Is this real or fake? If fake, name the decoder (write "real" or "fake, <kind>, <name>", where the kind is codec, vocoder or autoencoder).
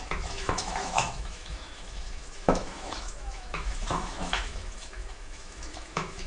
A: fake, autoencoder, DAC-VAE